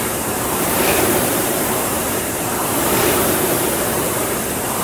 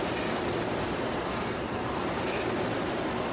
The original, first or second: second